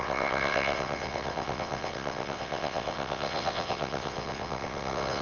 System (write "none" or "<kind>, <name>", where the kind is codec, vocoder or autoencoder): vocoder, WaveNeXt